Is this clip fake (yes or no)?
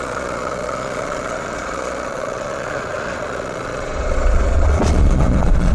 yes